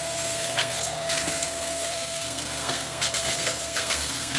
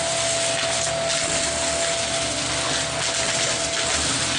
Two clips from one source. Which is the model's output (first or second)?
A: first